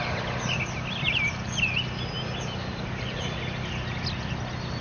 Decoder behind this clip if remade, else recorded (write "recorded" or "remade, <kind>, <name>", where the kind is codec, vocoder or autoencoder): recorded